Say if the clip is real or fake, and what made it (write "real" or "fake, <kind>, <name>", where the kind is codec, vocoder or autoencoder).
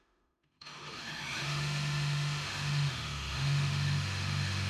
fake, autoencoder, DAC-VAE